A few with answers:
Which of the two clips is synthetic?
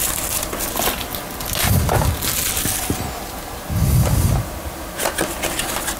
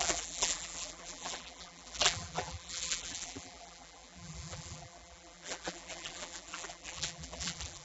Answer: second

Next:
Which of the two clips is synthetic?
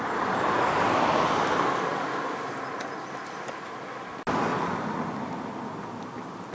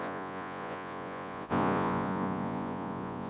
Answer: second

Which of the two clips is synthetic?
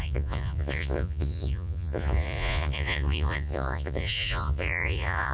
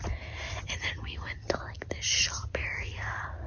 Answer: first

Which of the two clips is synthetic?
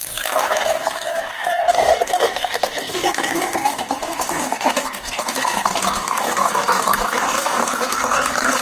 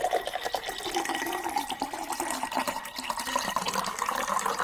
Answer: first